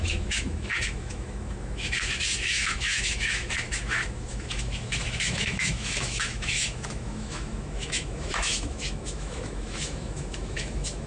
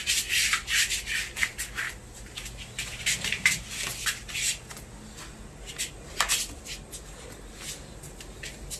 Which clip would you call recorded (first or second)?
second